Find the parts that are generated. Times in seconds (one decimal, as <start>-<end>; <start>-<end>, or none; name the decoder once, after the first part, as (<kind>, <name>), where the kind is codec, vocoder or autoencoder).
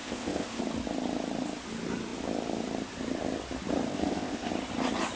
0.0-0.6 (codec, ZipCodec); 3.9-4.5